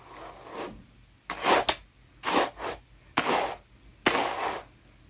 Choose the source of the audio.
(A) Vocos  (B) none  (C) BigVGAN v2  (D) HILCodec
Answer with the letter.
B